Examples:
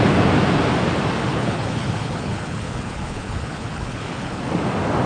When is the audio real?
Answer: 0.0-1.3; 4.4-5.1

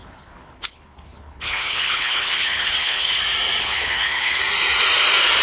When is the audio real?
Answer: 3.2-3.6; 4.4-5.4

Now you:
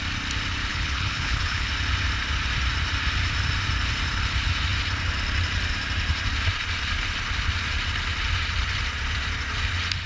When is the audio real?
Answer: 0.0-0.7; 1.7-10.1

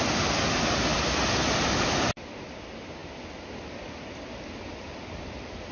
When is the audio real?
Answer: 0.0-5.7

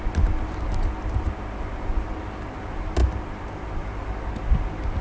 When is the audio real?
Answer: 0.0-5.0

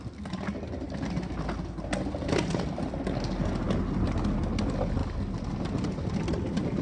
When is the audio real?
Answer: 0.0-6.8

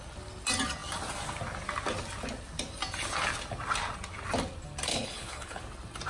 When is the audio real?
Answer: 0.0-4.9; 5.6-6.1

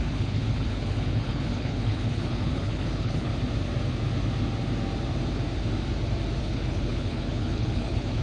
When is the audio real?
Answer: 3.3-6.4